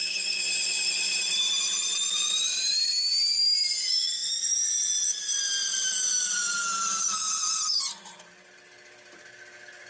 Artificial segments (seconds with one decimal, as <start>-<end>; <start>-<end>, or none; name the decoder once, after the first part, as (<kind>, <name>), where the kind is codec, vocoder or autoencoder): 0.0-2.5 (vocoder, BigVGAN v2); 5.7-6.6